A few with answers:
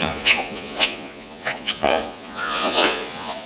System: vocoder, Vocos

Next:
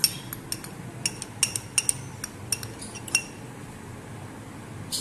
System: none